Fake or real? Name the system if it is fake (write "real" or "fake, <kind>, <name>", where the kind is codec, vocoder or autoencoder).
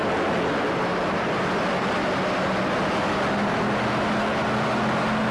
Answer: real